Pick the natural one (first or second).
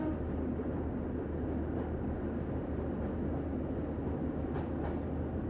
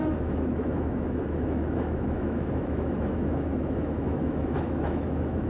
first